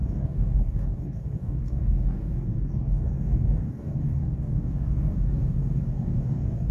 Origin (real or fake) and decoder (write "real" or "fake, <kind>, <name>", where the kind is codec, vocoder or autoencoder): fake, codec, DAC